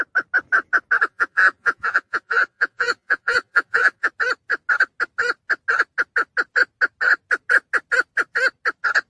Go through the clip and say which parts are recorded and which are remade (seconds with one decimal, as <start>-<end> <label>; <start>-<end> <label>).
0.0-1.1 recorded; 1.1-4.1 remade; 4.1-9.1 recorded